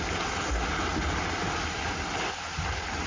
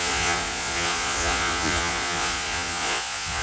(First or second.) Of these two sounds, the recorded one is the first